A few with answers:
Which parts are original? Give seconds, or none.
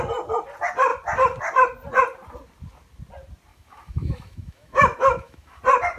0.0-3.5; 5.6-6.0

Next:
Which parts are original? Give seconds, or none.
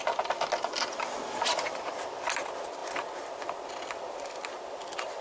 0.0-5.2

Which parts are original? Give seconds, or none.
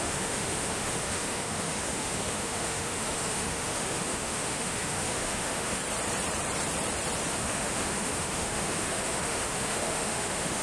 5.8-7.3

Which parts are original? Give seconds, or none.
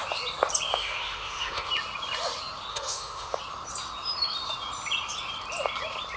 0.0-0.7; 1.7-2.7; 3.4-6.2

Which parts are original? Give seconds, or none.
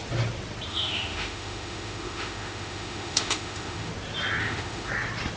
0.0-0.7; 3.9-4.4; 4.9-5.4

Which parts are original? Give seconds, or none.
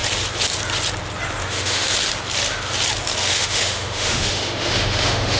0.0-1.4; 1.9-3.2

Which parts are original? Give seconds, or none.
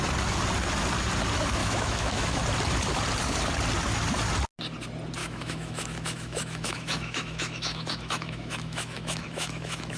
0.0-1.6; 2.4-5.2